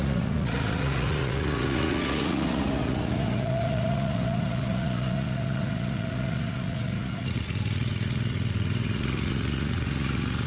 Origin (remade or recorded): remade